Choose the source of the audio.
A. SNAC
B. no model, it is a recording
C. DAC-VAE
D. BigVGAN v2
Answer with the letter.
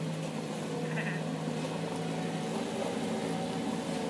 B